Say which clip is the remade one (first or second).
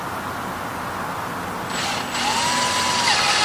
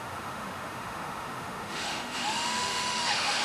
second